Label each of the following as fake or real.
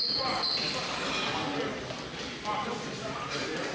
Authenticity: real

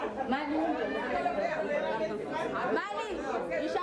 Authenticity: real